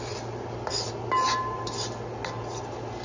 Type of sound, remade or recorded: recorded